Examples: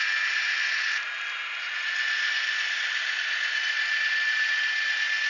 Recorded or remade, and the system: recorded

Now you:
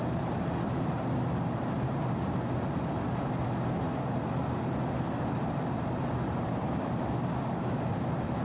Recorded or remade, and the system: recorded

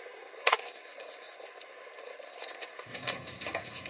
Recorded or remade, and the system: remade, codec, SNAC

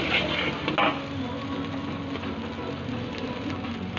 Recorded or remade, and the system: recorded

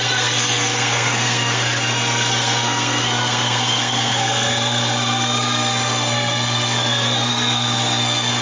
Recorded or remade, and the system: remade, codec, SNAC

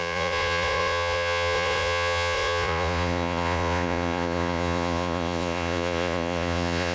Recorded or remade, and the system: remade, vocoder, Vocos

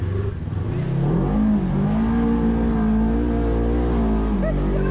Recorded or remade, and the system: recorded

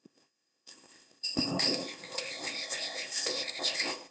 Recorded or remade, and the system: remade, codec, ZipCodec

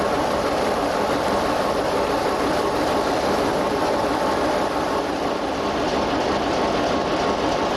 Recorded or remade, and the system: remade, vocoder, BigVGAN v2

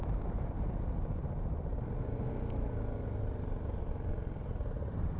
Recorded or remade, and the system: recorded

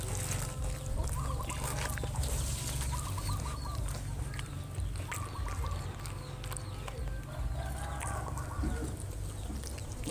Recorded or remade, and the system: recorded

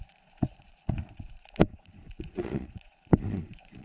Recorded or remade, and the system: remade, vocoder, Vocos